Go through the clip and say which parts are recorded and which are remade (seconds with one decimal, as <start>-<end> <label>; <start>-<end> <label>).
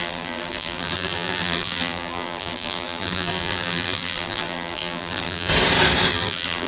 0.0-5.5 remade; 5.5-6.1 recorded; 6.1-6.7 remade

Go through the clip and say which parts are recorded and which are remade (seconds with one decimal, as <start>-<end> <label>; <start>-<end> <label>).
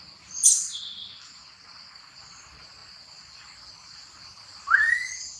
0.0-5.4 recorded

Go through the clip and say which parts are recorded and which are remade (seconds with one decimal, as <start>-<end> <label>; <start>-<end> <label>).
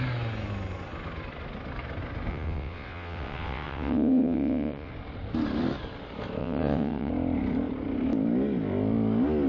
0.0-2.3 recorded; 2.3-4.9 remade; 4.9-6.4 recorded; 6.4-7.1 remade; 7.1-9.5 recorded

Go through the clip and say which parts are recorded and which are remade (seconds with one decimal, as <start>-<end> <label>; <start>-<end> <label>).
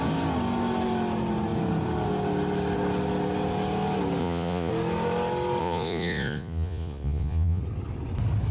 0.0-4.2 recorded; 4.2-4.7 remade; 4.7-5.6 recorded; 5.6-7.6 remade; 7.6-8.5 recorded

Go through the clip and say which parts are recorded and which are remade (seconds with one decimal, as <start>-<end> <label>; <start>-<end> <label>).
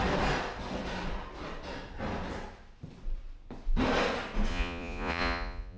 0.0-4.5 recorded; 4.5-5.8 remade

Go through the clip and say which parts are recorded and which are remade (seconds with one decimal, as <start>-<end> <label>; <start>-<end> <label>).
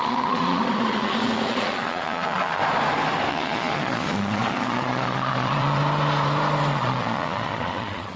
0.0-2.6 remade; 2.6-3.3 recorded; 3.3-5.8 remade; 5.8-6.7 recorded; 6.7-8.2 remade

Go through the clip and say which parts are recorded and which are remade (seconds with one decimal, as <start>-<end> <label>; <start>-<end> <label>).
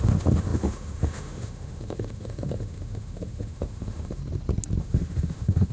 0.0-4.2 remade; 4.2-4.8 recorded; 4.8-5.7 remade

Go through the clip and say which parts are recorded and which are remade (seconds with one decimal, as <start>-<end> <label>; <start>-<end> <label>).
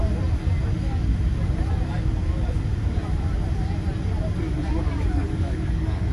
0.0-0.7 recorded; 0.7-1.1 remade; 1.1-4.8 recorded; 4.8-6.1 remade